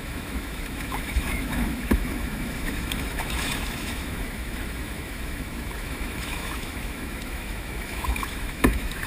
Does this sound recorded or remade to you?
remade